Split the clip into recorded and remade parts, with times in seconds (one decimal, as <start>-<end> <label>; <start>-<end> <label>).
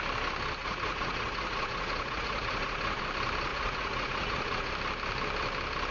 0.0-0.6 recorded; 0.6-3.0 remade; 3.0-3.5 recorded; 3.5-4.7 remade; 4.7-5.9 recorded